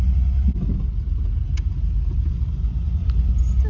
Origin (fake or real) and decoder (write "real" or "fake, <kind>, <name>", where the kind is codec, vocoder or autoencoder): real